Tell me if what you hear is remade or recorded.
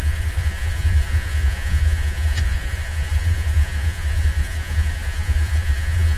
remade